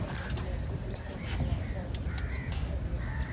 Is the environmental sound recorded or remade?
recorded